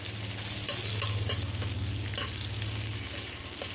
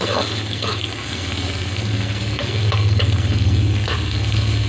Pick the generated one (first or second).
second